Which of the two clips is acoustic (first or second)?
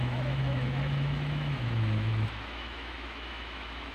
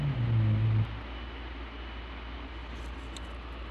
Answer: second